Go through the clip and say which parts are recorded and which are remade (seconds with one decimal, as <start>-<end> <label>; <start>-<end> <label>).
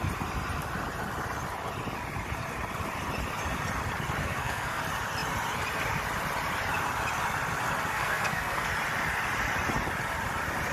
0.0-4.2 recorded; 4.2-4.8 remade; 4.8-7.9 recorded; 7.9-8.7 remade; 8.7-10.7 recorded